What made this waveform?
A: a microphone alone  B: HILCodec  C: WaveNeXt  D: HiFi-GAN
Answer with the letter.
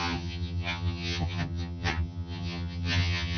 D